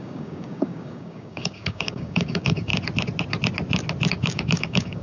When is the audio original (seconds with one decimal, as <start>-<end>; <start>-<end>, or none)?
2.7-4.1